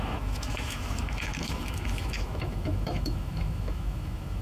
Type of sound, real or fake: fake